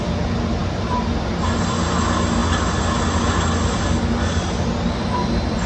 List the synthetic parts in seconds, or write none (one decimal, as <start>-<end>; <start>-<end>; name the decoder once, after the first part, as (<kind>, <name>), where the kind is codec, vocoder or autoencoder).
none